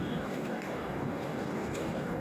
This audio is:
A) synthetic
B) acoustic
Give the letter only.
A